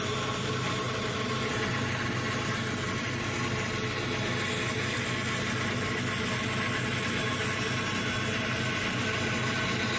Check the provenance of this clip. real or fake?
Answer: real